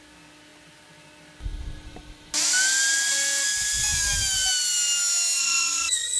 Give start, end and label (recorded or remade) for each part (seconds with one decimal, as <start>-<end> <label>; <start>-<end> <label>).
0.0-5.4 recorded; 5.4-6.2 remade